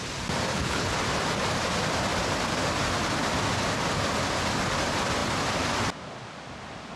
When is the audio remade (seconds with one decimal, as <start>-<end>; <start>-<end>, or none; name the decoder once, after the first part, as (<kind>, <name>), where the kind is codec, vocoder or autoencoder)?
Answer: 0.5-1.0 (codec, HILCodec)